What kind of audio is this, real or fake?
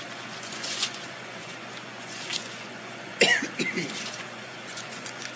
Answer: fake